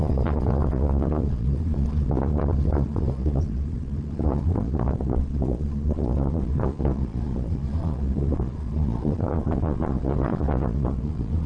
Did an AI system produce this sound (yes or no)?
yes